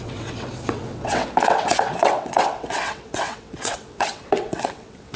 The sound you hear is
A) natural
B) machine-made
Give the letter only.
B